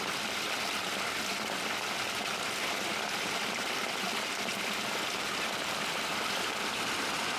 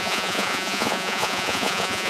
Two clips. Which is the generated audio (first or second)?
second